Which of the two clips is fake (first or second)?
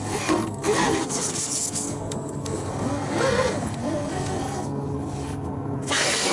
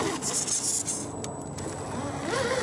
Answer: first